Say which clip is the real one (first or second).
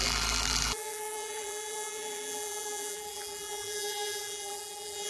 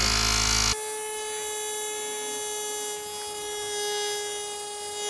second